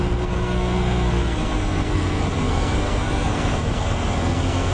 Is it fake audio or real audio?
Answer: fake